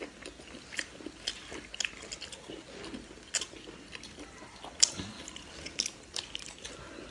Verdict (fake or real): real